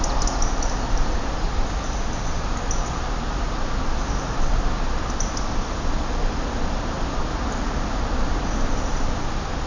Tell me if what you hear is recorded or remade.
recorded